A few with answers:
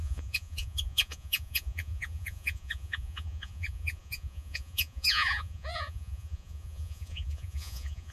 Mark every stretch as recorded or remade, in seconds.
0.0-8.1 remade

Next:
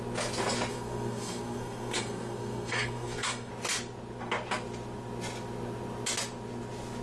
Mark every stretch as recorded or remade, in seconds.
0.0-0.7 recorded; 0.7-3.5 remade; 3.5-7.0 recorded

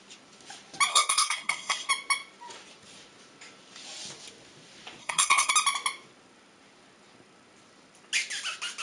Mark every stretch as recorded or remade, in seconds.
0.0-0.9 recorded; 0.9-1.9 remade; 1.9-5.0 recorded; 5.0-5.5 remade; 5.5-8.8 recorded